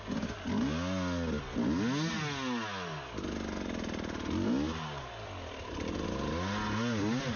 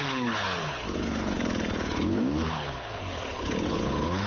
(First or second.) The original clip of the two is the first